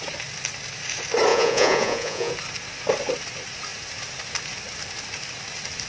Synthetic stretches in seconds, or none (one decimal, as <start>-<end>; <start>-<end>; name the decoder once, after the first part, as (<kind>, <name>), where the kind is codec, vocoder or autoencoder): 1.3-2.3 (vocoder, Vocos)